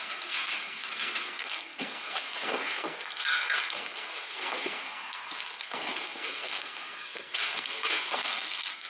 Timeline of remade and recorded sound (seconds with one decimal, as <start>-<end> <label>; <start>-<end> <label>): 0.0-8.9 remade